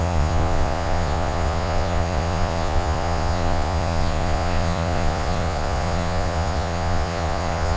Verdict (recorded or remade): remade